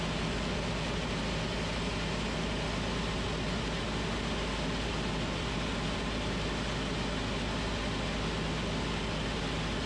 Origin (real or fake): real